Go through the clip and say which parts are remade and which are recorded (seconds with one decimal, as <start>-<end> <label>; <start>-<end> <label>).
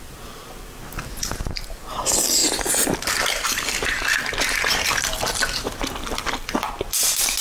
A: 0.0-2.4 recorded; 2.4-6.7 remade; 6.7-7.4 recorded